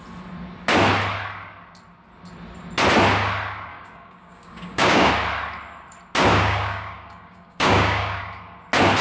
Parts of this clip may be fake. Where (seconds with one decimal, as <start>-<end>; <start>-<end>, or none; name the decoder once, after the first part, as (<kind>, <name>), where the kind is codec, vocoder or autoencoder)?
3.7-5.1 (codec, DAC); 6.3-8.2